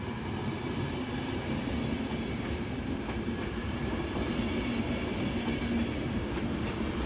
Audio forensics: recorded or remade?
recorded